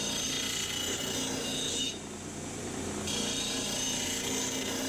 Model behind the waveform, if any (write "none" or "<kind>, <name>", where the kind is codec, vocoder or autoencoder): none